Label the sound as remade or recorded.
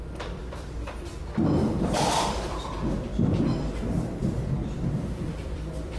remade